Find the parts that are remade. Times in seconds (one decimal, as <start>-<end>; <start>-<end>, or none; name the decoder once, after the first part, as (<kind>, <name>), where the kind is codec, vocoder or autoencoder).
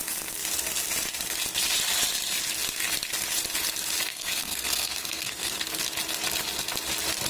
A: 4.1-5.8 (codec, SNAC)